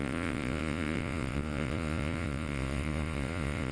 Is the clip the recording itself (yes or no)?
no